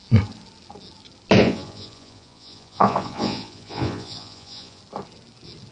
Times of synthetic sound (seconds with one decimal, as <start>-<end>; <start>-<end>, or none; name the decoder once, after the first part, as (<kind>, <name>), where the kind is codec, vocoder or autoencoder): 1.4-4.8 (vocoder, Vocos)